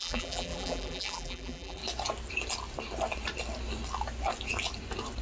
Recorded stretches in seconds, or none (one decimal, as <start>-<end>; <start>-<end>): 1.8-5.2